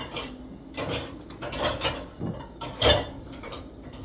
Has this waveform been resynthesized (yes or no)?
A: no